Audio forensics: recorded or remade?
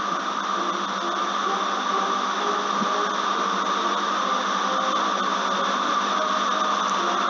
recorded